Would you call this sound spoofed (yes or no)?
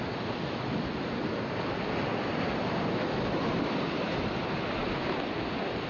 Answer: no